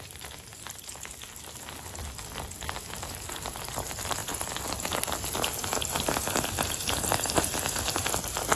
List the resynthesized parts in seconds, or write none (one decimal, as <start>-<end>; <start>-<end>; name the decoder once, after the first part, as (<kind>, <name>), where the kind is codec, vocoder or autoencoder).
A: none